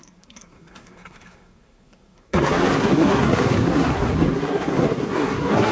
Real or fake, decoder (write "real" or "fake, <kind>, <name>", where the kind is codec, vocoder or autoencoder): fake, codec, SNAC